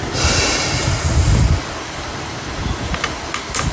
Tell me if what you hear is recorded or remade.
recorded